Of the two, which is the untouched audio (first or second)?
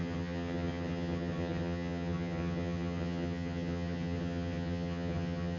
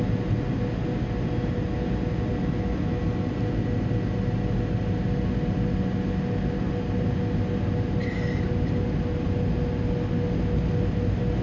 second